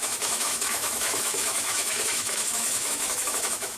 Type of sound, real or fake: fake